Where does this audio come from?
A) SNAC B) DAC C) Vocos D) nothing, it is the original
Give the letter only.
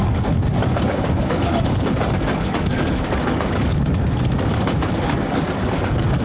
B